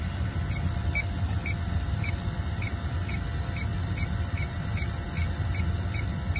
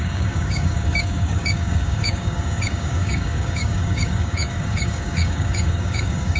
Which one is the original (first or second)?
first